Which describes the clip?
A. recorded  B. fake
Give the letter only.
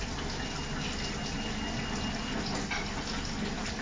A